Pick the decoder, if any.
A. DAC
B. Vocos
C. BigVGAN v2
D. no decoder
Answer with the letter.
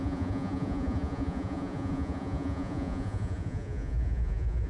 B